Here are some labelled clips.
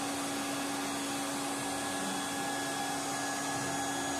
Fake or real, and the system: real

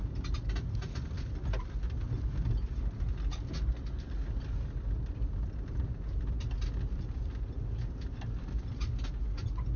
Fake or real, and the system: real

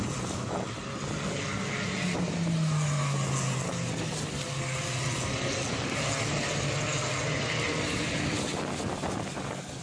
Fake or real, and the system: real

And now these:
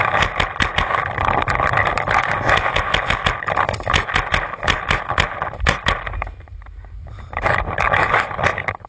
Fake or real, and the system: real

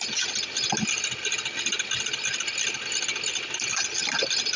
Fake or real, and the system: real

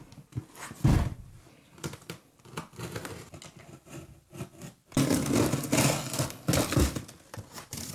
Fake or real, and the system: real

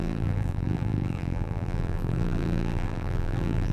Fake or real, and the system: fake, vocoder, BigVGAN v2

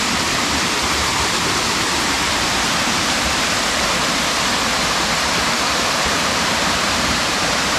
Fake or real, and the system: fake, vocoder, BigVGAN v2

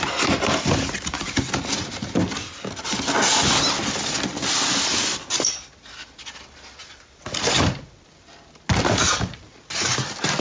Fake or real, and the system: real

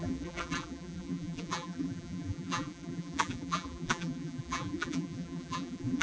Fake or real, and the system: fake, vocoder, BigVGAN v2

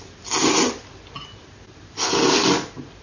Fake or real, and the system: real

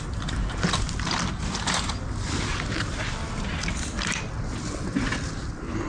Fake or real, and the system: real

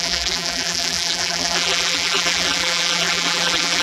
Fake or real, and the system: fake, vocoder, BigVGAN v2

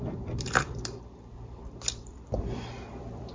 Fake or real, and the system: fake, vocoder, BigVGAN v2